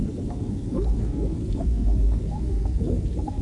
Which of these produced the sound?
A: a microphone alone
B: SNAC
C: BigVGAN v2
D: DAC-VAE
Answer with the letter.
B